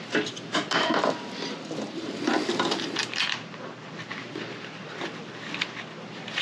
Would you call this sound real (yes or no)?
yes